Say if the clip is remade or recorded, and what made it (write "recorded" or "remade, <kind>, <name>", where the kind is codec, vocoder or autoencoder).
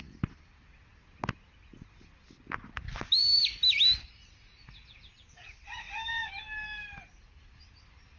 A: recorded